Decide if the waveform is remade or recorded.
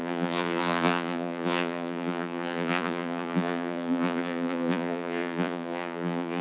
remade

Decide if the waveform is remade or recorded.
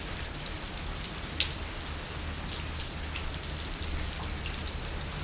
recorded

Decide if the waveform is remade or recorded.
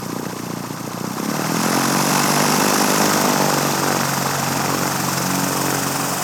recorded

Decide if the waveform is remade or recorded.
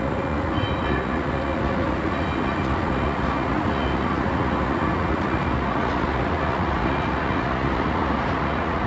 remade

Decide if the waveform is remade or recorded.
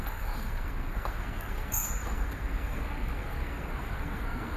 remade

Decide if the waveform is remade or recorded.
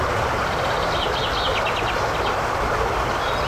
recorded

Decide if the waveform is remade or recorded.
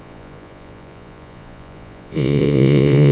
remade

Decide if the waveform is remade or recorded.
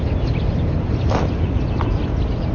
recorded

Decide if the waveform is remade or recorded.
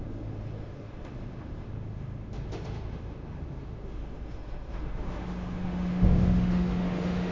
remade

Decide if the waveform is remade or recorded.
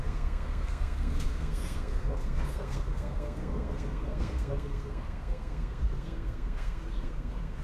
remade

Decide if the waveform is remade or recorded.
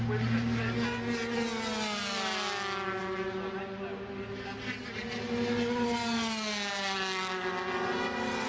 recorded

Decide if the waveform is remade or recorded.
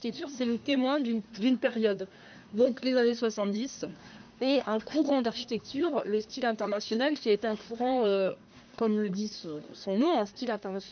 remade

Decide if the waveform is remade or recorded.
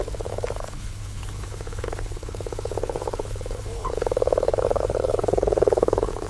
remade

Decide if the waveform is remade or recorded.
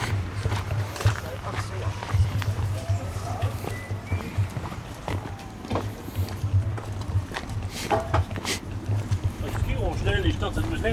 remade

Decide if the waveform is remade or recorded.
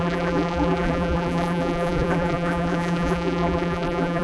remade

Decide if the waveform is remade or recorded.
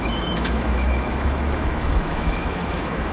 remade